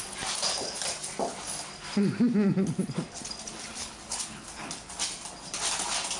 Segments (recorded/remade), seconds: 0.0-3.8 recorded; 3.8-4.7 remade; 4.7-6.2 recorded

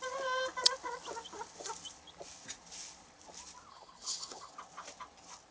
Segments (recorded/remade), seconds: 0.0-3.7 recorded; 3.7-4.5 remade; 4.5-5.5 recorded

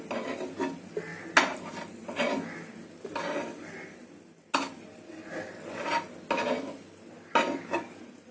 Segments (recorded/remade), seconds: 0.0-8.3 recorded

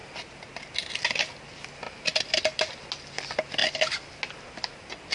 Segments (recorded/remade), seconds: 0.0-5.1 recorded

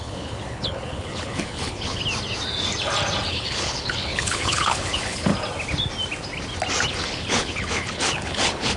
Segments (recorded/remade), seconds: 0.0-2.0 remade; 2.0-3.3 recorded; 3.3-5.3 remade; 5.3-6.9 recorded; 6.9-8.8 remade

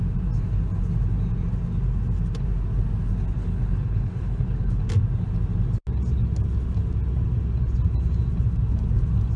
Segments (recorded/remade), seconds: 0.0-3.4 recorded; 3.4-4.8 remade; 4.8-9.4 recorded

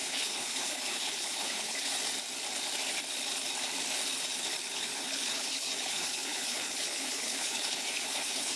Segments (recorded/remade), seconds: 0.0-1.9 remade; 1.9-4.7 recorded; 4.7-8.6 remade